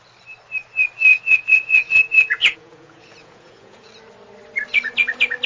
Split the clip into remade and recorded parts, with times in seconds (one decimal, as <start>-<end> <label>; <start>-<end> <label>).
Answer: 0.0-1.1 recorded; 1.1-3.9 remade; 3.9-5.5 recorded

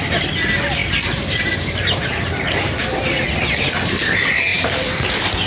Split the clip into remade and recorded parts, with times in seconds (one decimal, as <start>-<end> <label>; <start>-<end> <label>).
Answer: 0.0-0.8 recorded; 0.8-3.2 remade; 3.2-4.5 recorded; 4.5-5.1 remade; 5.1-5.5 recorded

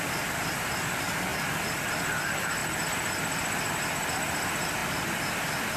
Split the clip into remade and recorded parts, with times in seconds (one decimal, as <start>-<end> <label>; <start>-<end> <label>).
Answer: 0.0-5.8 recorded

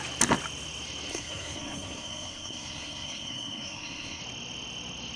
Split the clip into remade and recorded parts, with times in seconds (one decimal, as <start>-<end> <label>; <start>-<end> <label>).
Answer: 0.0-1.1 recorded; 1.1-4.2 remade; 4.2-5.2 recorded

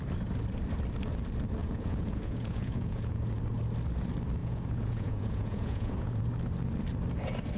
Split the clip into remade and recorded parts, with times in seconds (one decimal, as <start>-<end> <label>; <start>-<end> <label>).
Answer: 0.0-1.6 recorded; 1.6-3.4 remade; 3.4-4.4 recorded; 4.4-6.2 remade; 6.2-7.6 recorded

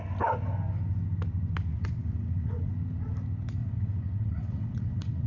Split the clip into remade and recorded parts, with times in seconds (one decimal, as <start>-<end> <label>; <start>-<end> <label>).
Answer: 0.0-1.7 recorded; 1.7-2.7 remade; 2.7-3.6 recorded; 3.6-5.3 remade

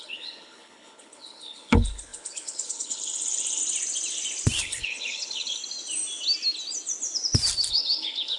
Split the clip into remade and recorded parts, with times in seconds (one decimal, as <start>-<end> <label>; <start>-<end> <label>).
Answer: 0.0-3.6 remade; 3.6-4.6 recorded; 4.6-5.6 remade; 5.6-7.7 recorded; 7.7-8.4 remade

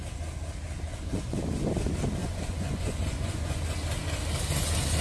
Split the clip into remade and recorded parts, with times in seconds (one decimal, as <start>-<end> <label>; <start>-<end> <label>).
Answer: 0.0-0.9 recorded; 0.9-1.4 remade; 1.4-2.2 recorded; 2.2-3.6 remade; 3.6-5.0 recorded